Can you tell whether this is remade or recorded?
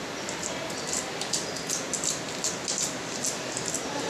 recorded